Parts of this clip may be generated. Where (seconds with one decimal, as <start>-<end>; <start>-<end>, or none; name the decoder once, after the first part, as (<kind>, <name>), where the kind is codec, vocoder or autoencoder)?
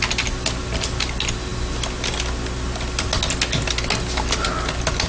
none